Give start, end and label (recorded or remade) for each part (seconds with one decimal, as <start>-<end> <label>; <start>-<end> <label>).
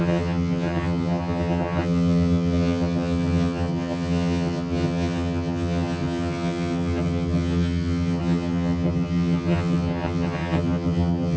0.0-11.4 remade